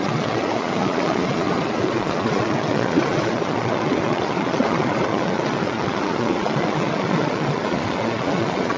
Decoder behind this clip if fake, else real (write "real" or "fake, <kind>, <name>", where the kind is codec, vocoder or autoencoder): fake, vocoder, Vocos